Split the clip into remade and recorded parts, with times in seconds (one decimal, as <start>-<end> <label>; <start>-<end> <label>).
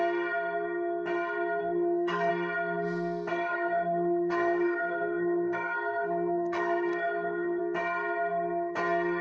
0.0-1.6 recorded; 1.6-2.3 remade; 2.3-3.3 recorded; 3.3-7.6 remade; 7.6-9.2 recorded